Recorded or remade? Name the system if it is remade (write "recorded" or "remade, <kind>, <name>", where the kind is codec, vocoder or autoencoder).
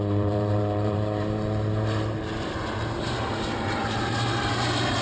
remade, vocoder, BigVGAN v2